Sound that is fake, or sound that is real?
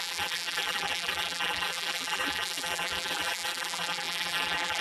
fake